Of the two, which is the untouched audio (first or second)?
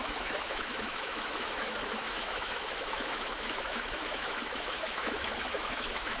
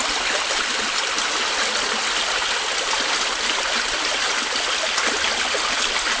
second